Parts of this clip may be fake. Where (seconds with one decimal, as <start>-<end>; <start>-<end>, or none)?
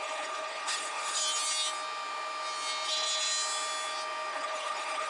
0.0-1.2; 4.3-5.1